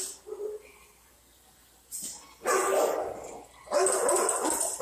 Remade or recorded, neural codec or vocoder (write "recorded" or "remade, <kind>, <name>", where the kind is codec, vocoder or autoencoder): recorded